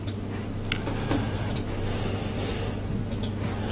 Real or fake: real